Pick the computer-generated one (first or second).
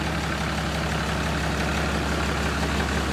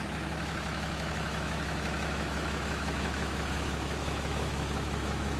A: second